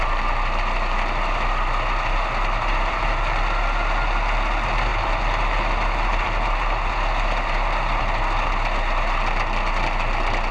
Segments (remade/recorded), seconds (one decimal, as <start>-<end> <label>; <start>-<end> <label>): 0.0-10.5 recorded